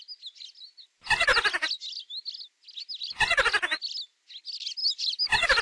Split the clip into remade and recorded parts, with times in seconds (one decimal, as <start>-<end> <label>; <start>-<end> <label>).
0.0-4.8 recorded; 4.8-5.6 remade